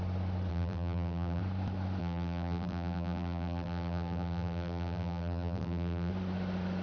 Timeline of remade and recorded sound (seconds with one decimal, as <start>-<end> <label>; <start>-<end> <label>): 0.0-0.5 recorded; 0.5-1.4 remade; 1.4-2.0 recorded; 2.0-6.1 remade; 6.1-6.8 recorded